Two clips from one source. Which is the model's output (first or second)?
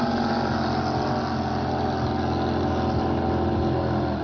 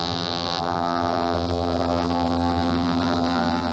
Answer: second